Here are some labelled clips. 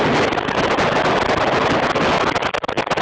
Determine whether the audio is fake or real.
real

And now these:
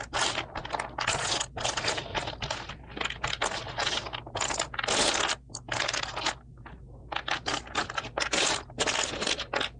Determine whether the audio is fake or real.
real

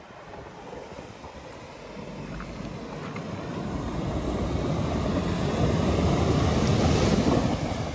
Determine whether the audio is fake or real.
real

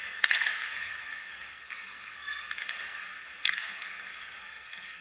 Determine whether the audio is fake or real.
fake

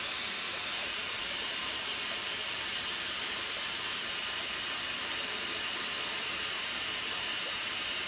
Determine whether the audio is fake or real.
fake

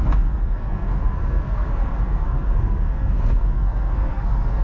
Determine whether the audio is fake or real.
fake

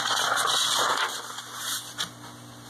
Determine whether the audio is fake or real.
real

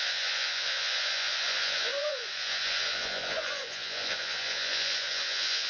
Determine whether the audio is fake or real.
fake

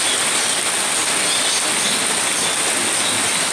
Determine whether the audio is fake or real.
real